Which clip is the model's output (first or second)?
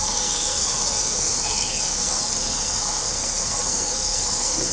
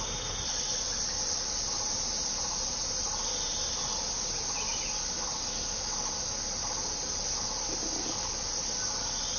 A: first